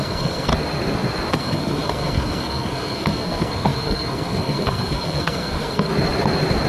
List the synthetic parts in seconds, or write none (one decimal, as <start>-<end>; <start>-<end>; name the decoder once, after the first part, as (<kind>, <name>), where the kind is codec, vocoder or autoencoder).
0.0-0.5 (codec, SNAC); 1.3-5.9